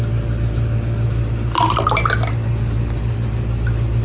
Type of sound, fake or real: real